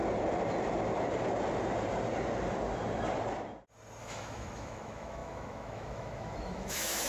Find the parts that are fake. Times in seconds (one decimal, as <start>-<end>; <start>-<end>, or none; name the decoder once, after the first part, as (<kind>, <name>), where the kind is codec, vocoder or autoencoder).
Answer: 4.0-7.1 (autoencoder, DAC-VAE)